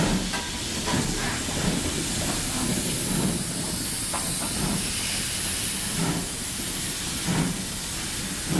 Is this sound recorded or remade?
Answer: recorded